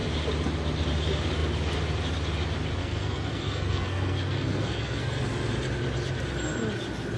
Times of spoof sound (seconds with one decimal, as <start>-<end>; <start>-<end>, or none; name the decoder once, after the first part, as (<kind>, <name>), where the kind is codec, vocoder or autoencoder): 2.8-5.2 (codec, SNAC)